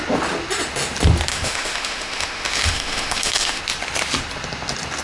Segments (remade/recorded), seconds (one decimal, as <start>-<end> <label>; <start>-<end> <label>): 0.0-1.3 recorded; 1.3-3.6 remade; 3.6-5.0 recorded